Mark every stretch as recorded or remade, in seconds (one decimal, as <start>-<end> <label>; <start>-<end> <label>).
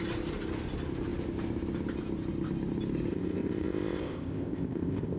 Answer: 0.0-3.1 recorded; 3.1-5.2 remade